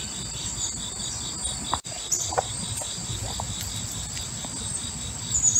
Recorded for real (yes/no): yes